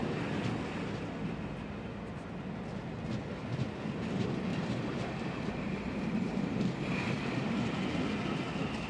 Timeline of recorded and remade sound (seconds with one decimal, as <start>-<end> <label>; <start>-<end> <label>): 0.0-4.5 recorded; 4.5-6.6 remade; 6.6-8.9 recorded